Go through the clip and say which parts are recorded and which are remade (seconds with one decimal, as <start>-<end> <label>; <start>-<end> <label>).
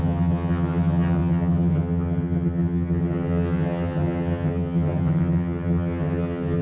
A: 0.0-6.6 remade